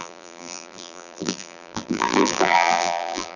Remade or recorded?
remade